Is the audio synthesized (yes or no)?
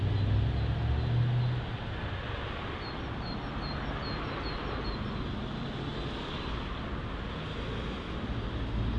no